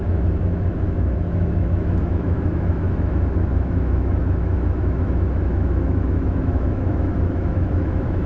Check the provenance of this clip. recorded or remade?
remade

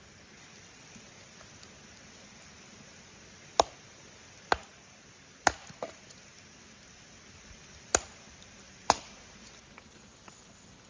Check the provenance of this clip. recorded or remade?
recorded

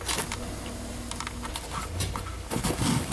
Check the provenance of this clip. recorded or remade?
recorded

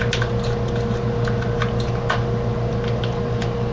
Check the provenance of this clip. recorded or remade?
recorded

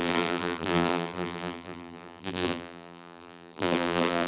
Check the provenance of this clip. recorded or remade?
remade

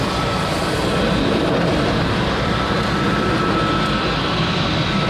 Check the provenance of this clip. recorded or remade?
recorded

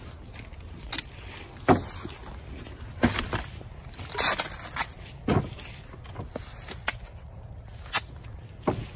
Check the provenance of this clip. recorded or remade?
recorded